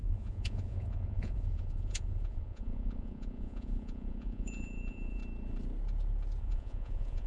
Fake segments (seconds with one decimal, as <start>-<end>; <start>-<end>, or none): 0.0-5.2; 6.4-7.3